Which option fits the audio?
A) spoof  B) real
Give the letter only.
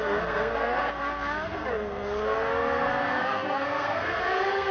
A